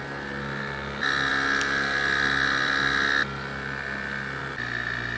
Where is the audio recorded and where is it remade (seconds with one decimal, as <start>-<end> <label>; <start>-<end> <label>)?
0.0-5.2 recorded